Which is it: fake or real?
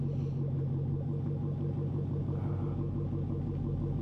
real